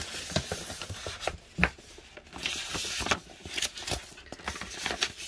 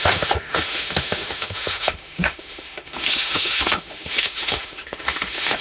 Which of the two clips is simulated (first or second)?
second